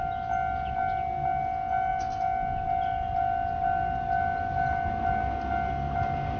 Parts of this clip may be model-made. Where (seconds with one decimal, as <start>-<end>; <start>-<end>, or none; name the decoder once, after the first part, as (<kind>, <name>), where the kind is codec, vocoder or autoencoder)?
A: none